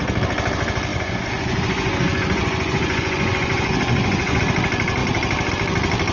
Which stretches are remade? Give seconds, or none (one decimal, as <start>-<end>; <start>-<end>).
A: 0.9-4.4